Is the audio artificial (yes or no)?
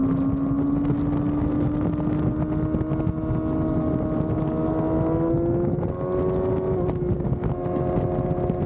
no